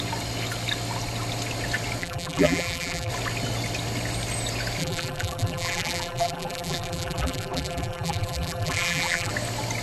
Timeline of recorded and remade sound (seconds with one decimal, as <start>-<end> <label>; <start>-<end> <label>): 0.0-2.0 recorded; 2.0-3.1 remade; 3.1-4.8 recorded; 4.8-9.3 remade; 9.3-9.8 recorded